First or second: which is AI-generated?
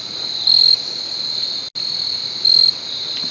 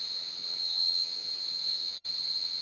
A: second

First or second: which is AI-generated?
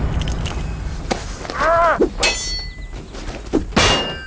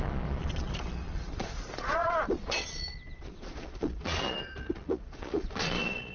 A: second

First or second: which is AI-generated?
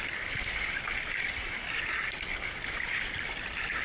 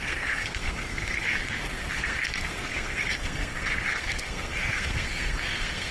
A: second